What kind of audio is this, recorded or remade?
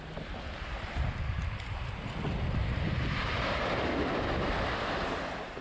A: recorded